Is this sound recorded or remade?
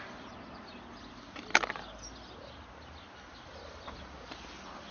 recorded